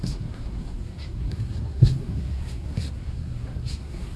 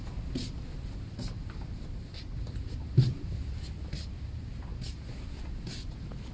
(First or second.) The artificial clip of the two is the first